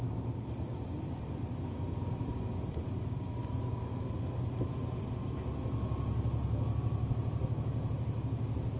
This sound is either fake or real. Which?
real